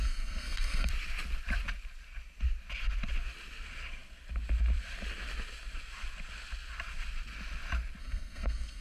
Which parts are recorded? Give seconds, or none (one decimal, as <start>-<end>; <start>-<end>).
0.9-8.0